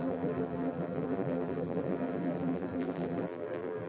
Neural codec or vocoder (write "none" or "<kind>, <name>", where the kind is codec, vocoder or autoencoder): vocoder, BigVGAN v2